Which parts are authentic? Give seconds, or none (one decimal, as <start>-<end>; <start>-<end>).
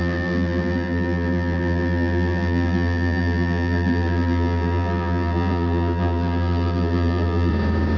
7.5-8.0